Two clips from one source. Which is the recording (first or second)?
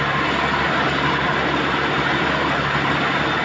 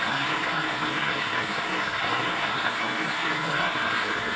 first